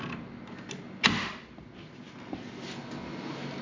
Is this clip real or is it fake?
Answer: real